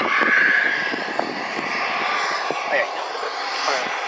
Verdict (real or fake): real